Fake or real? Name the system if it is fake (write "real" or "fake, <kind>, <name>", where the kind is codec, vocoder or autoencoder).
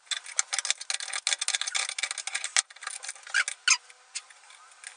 real